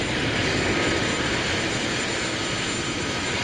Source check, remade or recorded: recorded